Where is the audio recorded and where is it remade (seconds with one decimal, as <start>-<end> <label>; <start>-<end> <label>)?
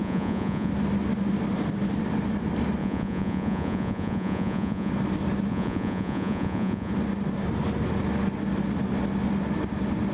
0.0-0.7 remade; 0.7-2.8 recorded; 2.8-4.9 remade; 4.9-5.5 recorded; 5.5-6.9 remade; 6.9-10.1 recorded